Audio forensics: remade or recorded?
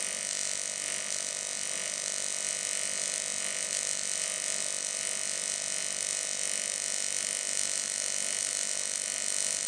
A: recorded